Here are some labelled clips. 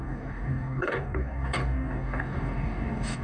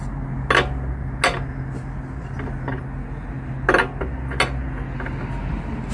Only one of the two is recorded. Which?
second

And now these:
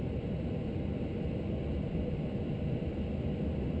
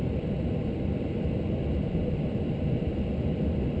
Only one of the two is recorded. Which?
first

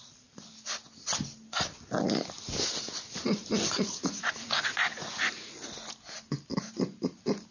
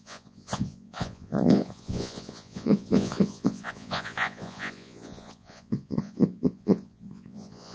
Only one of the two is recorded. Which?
first